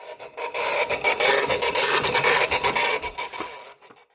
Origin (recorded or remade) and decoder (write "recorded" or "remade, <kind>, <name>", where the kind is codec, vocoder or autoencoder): recorded